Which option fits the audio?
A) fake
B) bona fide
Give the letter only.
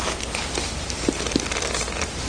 B